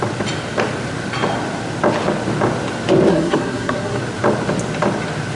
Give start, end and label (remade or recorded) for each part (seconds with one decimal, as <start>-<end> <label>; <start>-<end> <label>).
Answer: 0.0-3.1 recorded; 3.1-4.0 remade; 4.0-5.3 recorded